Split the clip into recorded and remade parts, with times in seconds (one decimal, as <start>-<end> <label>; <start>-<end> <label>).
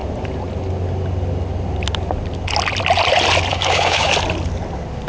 0.0-3.5 recorded; 3.5-4.1 remade; 4.1-5.1 recorded